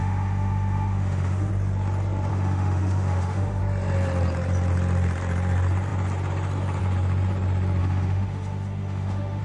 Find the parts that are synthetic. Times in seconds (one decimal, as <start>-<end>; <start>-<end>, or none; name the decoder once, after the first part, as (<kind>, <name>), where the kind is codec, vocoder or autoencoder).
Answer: 0.0-1.5 (autoencoder, DAC-VAE); 2.3-3.6; 7.8-9.4